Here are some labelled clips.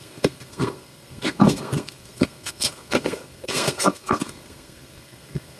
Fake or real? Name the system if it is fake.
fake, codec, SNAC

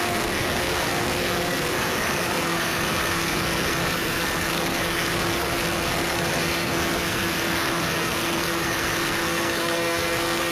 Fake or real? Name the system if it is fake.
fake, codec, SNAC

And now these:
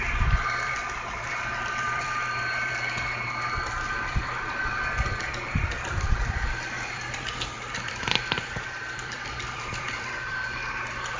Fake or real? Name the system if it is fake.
fake, vocoder, BigVGAN v2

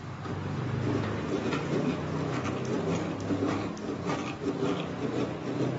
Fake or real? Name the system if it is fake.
real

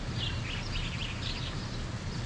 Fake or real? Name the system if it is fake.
real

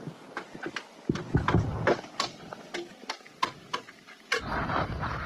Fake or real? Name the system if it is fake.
real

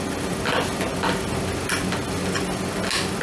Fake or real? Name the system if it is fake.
real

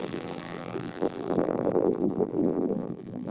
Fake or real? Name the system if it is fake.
fake, vocoder, BigVGAN v2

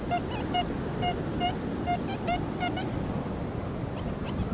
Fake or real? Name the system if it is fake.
real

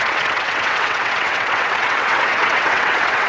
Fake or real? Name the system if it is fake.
fake, vocoder, WaveNeXt